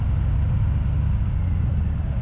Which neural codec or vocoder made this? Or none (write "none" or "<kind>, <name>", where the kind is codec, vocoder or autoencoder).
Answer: none